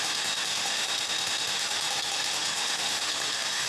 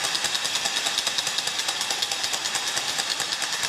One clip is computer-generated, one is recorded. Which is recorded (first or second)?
second